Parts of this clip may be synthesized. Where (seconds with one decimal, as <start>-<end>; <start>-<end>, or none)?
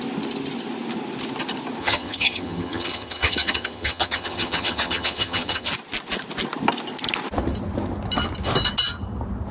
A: 1.8-5.7